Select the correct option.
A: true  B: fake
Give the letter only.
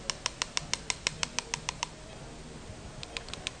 A